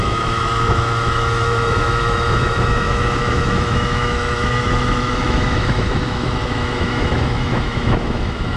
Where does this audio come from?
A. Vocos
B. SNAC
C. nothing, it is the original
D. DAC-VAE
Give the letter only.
D